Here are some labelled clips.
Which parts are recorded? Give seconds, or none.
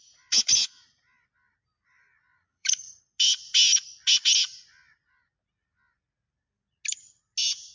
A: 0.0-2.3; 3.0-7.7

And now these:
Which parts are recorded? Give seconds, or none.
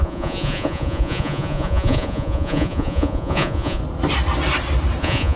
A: 3.8-5.0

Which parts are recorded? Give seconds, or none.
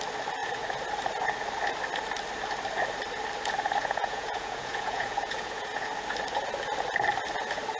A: 0.0-3.8; 5.9-7.8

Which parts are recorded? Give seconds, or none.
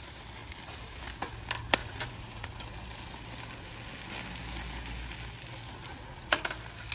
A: 0.0-1.8; 2.6-5.9; 6.5-6.9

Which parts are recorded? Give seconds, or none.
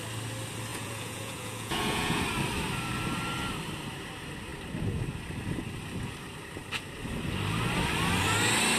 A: 0.0-0.7; 2.2-8.8